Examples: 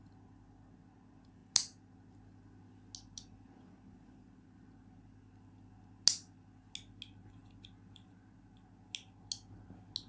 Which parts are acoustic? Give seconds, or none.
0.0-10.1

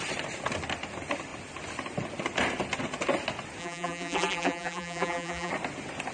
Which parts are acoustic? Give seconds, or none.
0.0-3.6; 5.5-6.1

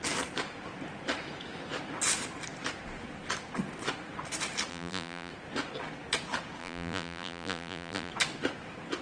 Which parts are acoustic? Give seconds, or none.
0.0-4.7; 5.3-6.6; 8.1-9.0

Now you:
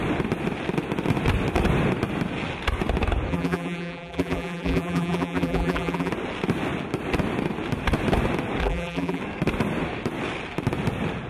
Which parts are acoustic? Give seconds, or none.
0.0-3.3; 6.1-8.6; 9.2-11.3